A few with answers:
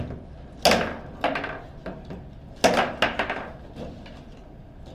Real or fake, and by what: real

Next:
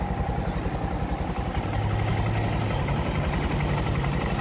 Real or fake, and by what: real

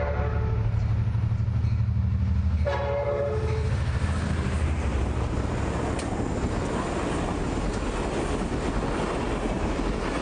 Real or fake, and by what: real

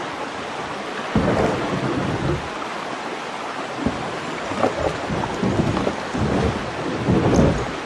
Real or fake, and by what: real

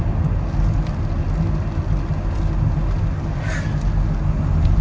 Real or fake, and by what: real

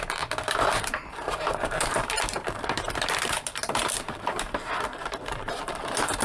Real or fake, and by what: fake, vocoder, BigVGAN v2